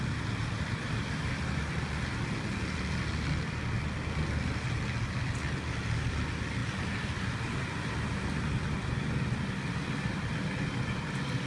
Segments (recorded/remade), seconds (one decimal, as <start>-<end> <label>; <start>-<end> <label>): 0.0-11.5 recorded